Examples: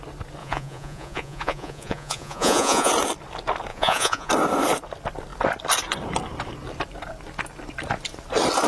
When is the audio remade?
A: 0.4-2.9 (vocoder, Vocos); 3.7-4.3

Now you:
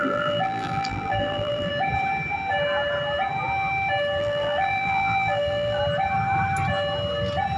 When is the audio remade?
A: 0.0-1.7 (vocoder, BigVGAN v2); 4.2-5.8